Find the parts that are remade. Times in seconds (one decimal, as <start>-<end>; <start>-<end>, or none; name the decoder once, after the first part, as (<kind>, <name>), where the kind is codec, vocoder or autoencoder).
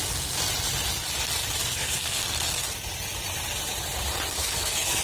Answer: 1.6-2.2 (codec, SNAC); 4.4-5.0